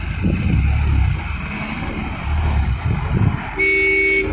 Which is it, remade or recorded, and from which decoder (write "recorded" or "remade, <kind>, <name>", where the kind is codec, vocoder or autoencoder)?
recorded